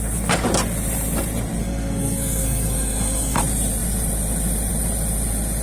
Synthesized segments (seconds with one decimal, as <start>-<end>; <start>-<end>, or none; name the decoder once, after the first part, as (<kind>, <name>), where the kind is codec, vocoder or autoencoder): 1.6-3.4 (codec, SNAC)